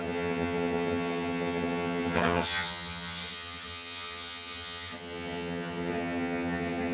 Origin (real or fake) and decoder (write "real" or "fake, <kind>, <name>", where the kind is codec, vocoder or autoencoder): fake, vocoder, HiFi-GAN